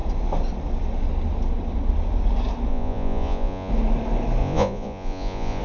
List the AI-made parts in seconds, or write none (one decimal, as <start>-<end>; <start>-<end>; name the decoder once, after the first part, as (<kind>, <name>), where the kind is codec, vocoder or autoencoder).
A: 2.7-3.7 (vocoder, Vocos); 4.4-5.6